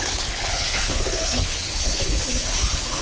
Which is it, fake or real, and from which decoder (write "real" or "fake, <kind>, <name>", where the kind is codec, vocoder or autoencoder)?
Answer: fake, codec, HILCodec